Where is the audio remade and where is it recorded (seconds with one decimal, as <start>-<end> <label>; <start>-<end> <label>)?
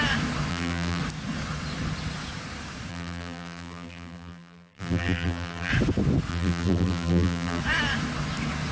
0.0-0.5 recorded; 0.5-1.0 remade; 1.0-2.9 recorded; 2.9-5.7 remade; 5.7-6.3 recorded; 6.3-7.6 remade; 7.6-8.7 recorded